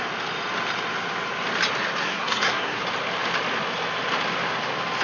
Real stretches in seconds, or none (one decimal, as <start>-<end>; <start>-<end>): 0.0-2.0; 2.8-5.0